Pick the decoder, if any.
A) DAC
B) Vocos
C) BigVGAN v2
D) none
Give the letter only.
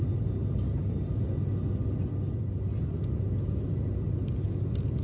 D